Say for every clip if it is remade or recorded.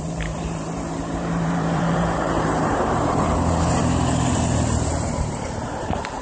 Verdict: remade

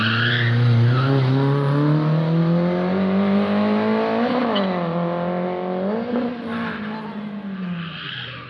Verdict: recorded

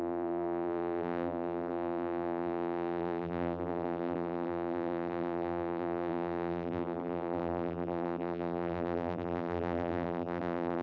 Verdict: remade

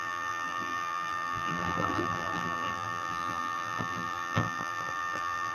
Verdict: remade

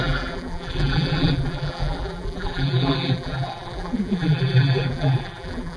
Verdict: remade